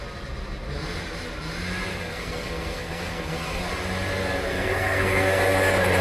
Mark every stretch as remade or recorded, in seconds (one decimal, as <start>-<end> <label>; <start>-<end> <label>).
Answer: 0.0-1.9 recorded; 1.9-3.7 remade; 3.7-4.5 recorded; 4.5-5.4 remade; 5.4-6.0 recorded